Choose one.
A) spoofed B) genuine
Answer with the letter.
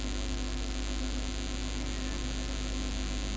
B